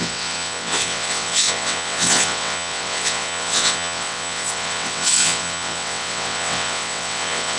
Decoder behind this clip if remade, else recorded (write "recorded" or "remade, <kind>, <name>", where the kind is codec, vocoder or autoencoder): remade, vocoder, WaveNeXt